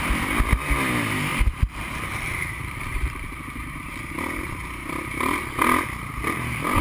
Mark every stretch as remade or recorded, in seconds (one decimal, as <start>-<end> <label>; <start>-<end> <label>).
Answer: 0.0-1.3 recorded; 1.3-5.4 remade; 5.4-6.8 recorded